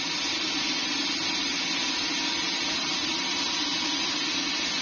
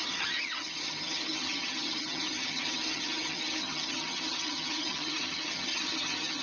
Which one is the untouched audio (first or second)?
first